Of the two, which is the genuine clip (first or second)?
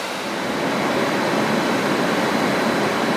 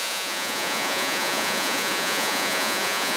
first